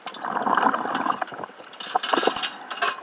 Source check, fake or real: real